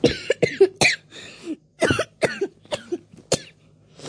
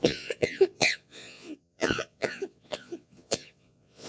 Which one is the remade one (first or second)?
second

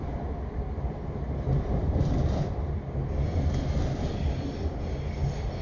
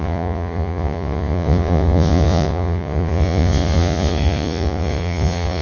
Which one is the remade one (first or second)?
second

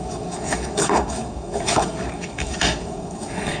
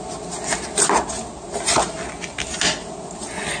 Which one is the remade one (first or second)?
first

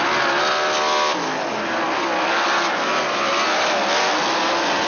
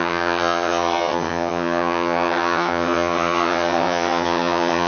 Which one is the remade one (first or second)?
second